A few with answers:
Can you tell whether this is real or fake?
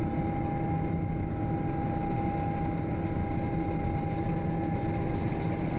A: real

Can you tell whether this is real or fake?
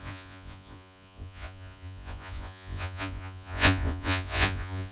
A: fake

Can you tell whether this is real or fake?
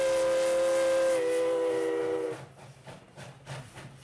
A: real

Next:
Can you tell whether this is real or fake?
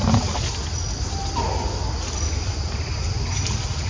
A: real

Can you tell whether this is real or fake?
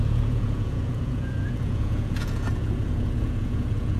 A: fake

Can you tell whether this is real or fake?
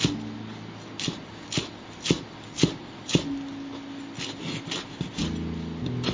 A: real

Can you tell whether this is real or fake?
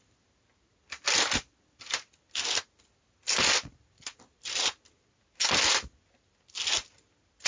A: real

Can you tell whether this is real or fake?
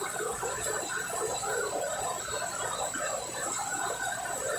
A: real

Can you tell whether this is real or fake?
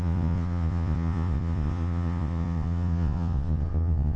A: fake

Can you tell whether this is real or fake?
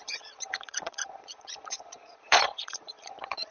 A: fake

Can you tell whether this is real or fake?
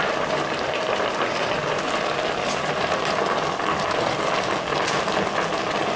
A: real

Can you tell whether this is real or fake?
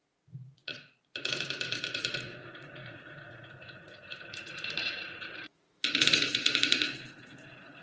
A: fake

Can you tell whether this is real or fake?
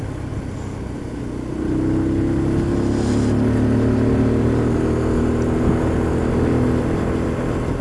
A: real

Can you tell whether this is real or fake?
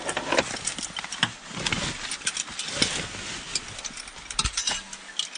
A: real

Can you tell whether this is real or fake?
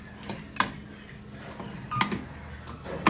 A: real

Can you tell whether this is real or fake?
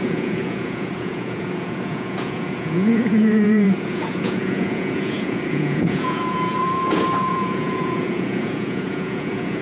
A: fake